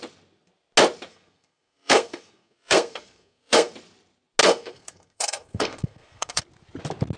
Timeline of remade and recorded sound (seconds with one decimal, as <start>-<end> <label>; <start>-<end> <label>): 0.0-1.1 recorded; 1.1-3.7 remade; 3.7-4.4 recorded; 4.4-6.4 remade; 6.4-7.2 recorded